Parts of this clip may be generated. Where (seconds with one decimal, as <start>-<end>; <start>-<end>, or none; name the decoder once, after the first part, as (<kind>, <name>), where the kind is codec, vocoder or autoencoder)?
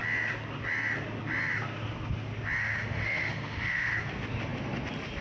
2.6-3.9 (autoencoder, DAC-VAE)